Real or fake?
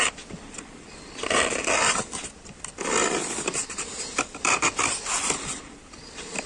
fake